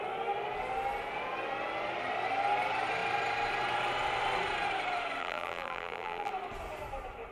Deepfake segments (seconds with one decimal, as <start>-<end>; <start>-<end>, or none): 5.2-6.3